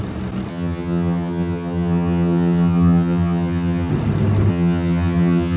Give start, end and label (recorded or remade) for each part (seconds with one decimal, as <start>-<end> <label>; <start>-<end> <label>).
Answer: 0.0-0.5 recorded; 0.5-3.9 remade; 3.9-4.5 recorded; 4.5-5.6 remade